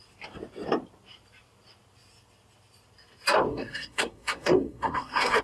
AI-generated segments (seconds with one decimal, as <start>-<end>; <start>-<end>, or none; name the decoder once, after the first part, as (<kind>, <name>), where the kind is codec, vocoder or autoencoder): 3.5-5.4 (codec, SNAC)